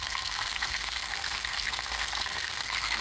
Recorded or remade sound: remade